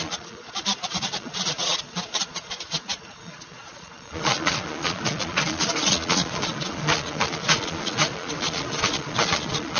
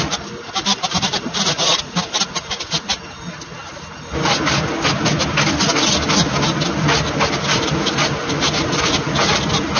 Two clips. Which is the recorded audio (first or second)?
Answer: second